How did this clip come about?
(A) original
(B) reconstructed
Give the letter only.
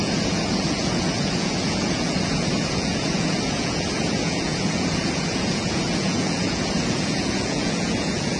B